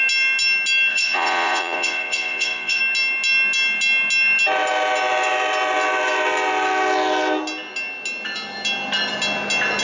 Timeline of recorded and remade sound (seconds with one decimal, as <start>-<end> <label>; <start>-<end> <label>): 0.0-0.9 recorded; 0.9-2.8 remade; 2.8-9.8 recorded